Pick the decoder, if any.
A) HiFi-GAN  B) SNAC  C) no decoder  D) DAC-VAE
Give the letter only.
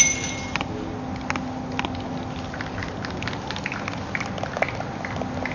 C